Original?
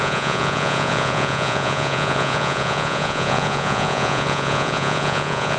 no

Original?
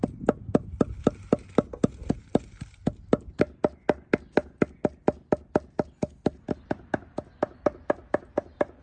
yes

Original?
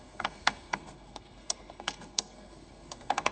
no